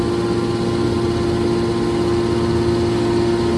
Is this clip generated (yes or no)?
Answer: no